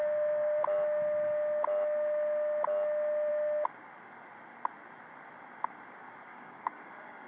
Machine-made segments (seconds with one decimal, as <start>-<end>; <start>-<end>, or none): 0.0-0.6; 6.3-7.3